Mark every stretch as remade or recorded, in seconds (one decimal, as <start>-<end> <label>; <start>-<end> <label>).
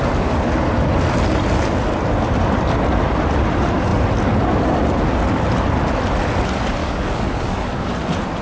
0.0-6.8 recorded; 6.8-7.9 remade; 7.9-8.4 recorded